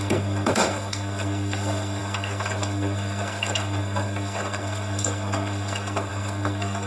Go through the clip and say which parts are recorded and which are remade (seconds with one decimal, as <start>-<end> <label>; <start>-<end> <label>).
0.0-6.9 remade